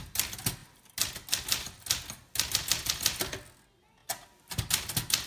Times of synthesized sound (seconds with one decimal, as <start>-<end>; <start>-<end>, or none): none